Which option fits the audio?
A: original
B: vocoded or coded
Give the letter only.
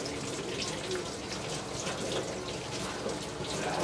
A